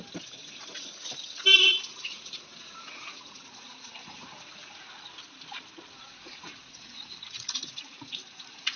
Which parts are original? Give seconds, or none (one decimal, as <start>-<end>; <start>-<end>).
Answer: 0.0-1.9; 4.9-6.0